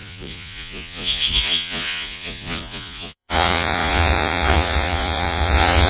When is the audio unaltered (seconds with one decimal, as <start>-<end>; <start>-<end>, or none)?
none